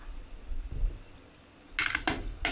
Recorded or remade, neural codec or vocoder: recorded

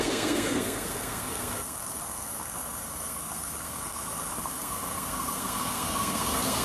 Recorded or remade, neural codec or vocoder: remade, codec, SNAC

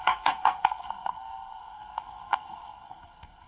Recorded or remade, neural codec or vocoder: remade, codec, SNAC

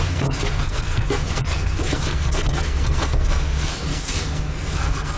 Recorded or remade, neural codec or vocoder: remade, codec, SNAC